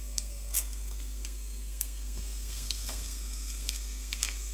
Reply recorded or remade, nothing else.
remade